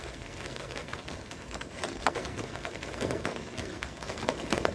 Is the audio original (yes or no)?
no